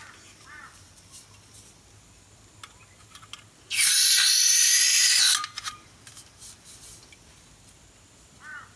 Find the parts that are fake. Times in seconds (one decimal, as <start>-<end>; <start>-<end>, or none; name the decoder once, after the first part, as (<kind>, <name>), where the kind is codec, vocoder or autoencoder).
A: none